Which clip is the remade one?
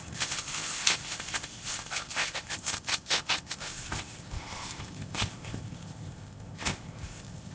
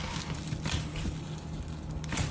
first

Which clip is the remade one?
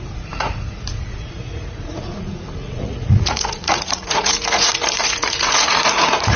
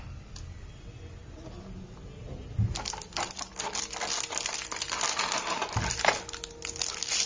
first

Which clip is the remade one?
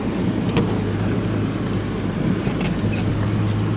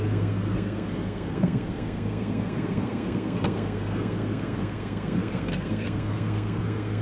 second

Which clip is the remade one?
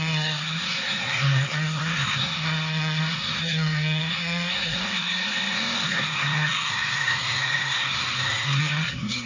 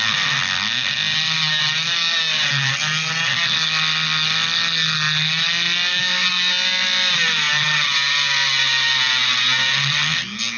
first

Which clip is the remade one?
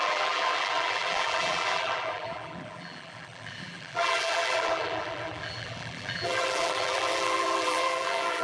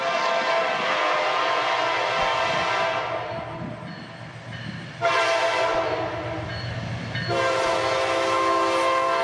first